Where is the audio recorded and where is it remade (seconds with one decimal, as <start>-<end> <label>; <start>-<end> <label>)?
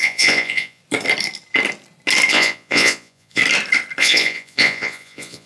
0.0-0.8 remade; 0.8-2.3 recorded; 2.3-3.4 remade; 3.4-4.0 recorded; 4.0-5.5 remade